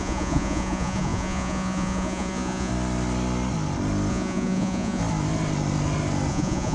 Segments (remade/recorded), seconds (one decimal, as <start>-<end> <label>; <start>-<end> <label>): 0.0-2.7 remade; 2.7-4.1 recorded; 4.1-5.0 remade; 5.0-6.3 recorded; 6.3-6.7 remade